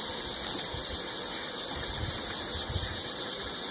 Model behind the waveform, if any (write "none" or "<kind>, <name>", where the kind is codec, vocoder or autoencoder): none